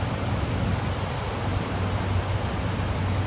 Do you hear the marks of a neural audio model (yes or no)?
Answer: no